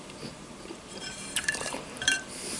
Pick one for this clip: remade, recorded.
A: remade